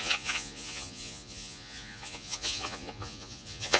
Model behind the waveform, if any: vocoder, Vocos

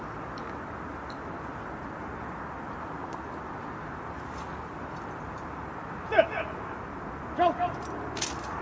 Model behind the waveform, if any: none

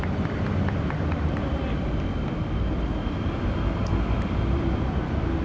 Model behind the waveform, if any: vocoder, BigVGAN v2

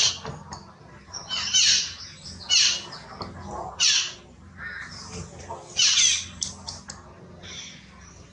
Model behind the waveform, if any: none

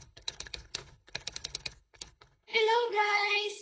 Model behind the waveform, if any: codec, HILCodec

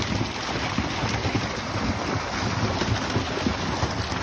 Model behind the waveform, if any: none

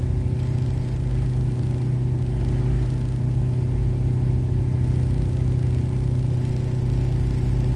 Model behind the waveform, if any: none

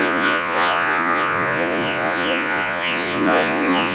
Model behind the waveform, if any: vocoder, Vocos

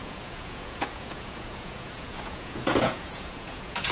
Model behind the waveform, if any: vocoder, Vocos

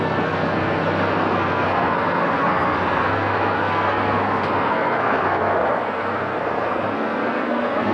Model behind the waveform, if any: codec, SNAC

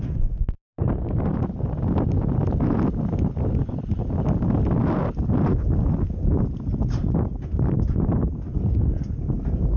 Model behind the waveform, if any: none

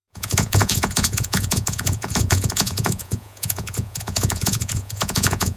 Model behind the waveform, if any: vocoder, Vocos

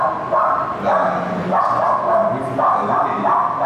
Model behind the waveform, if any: none